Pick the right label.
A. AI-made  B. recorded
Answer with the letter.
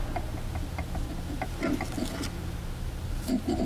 B